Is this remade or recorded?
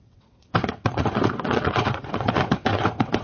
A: remade